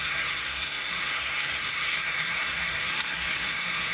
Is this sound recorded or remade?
remade